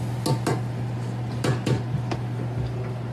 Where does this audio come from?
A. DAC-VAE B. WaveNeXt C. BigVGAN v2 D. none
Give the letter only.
D